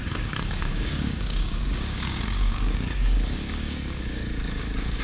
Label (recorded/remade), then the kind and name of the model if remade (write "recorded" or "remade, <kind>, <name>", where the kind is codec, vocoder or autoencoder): remade, codec, DAC